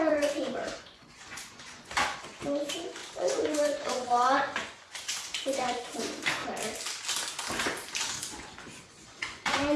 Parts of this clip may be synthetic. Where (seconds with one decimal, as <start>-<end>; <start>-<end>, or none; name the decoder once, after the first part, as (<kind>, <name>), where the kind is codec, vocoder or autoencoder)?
0.0-6.4 (vocoder, Vocos); 8.2-9.8